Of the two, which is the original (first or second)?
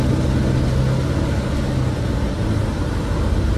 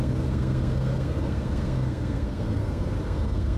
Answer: first